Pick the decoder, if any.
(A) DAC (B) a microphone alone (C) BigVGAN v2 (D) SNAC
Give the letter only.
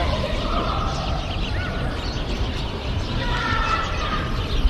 C